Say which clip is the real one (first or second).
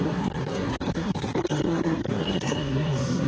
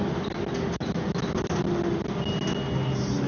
second